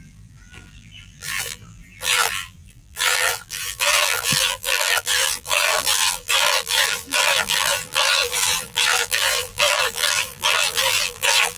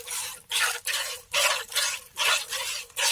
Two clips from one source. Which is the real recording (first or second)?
second